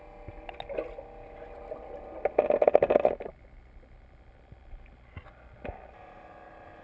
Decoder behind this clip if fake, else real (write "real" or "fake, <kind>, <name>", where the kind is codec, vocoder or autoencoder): real